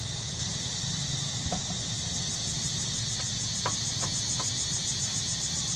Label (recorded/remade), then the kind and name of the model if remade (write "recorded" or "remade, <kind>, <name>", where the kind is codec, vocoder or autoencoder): recorded